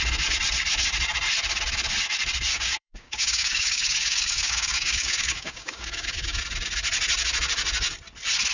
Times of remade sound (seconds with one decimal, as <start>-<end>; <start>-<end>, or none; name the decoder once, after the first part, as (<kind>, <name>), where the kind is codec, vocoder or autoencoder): 2.5-6.4 (codec, DAC)